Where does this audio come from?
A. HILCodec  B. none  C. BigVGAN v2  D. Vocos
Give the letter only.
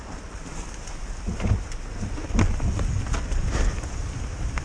B